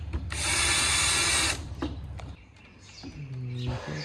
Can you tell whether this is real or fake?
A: real